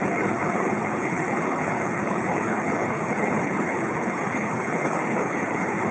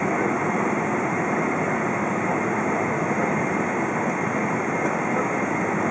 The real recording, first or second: second